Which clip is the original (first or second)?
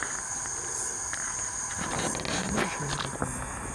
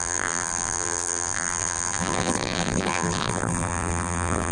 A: first